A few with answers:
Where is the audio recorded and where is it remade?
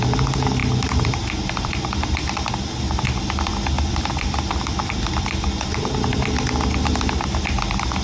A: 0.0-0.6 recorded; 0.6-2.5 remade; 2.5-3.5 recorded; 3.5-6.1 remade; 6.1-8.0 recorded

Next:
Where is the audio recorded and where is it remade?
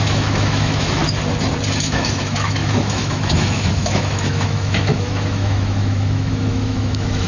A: 0.0-1.0 remade; 1.0-1.8 recorded; 1.8-7.3 remade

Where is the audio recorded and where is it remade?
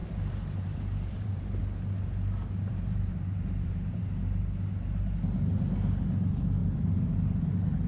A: 0.0-1.6 remade; 1.6-2.7 recorded; 2.7-4.0 remade; 4.0-6.6 recorded; 6.6-7.1 remade; 7.1-7.9 recorded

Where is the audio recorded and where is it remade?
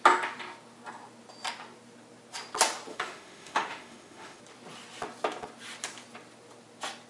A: 0.0-2.9 recorded; 2.9-4.4 remade; 4.4-7.1 recorded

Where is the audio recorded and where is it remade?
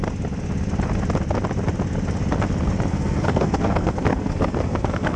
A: 0.0-2.9 recorded; 2.9-5.2 remade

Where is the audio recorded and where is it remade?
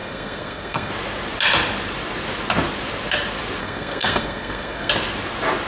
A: 0.0-0.9 remade; 0.9-3.6 recorded; 3.6-4.9 remade; 4.9-5.7 recorded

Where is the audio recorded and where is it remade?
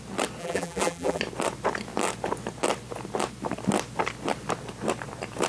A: 0.0-0.4 recorded; 0.4-1.2 remade; 1.2-5.5 recorded